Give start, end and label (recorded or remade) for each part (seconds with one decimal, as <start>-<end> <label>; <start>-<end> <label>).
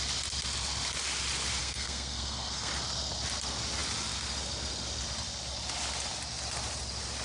0.0-1.6 recorded; 1.6-2.7 remade; 2.7-7.2 recorded